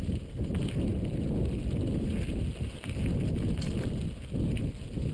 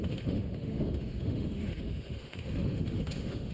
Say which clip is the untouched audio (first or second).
first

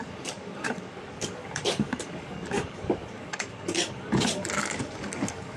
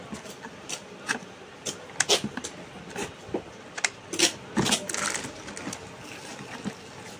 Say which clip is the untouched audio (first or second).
second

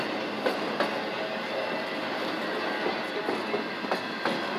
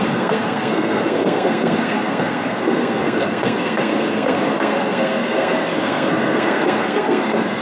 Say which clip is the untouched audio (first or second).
first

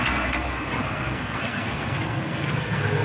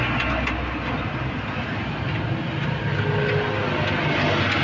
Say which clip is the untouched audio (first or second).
second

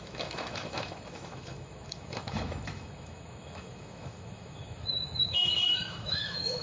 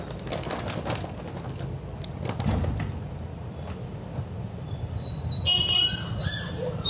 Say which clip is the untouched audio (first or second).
second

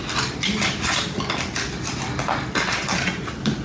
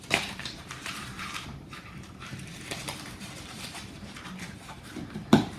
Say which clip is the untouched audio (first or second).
first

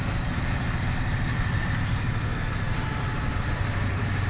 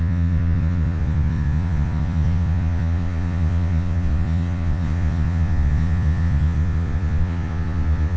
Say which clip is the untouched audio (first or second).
first